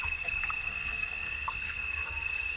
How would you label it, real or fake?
fake